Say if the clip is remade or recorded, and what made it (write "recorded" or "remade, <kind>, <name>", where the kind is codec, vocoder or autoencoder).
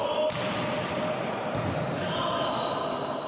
recorded